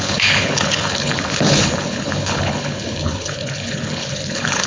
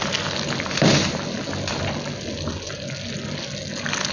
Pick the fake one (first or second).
first